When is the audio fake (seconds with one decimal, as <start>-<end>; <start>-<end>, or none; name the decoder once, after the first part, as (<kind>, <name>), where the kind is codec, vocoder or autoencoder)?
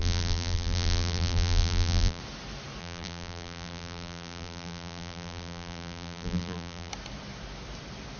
0.0-2.2 (vocoder, BigVGAN v2); 2.8-6.9